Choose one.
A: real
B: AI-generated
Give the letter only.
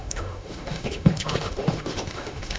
B